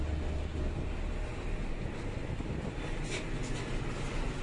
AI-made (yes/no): no